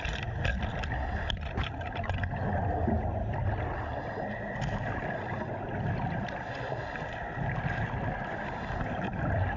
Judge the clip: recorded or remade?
recorded